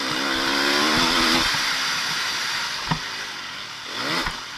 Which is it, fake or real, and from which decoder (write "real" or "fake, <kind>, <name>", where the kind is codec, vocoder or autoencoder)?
real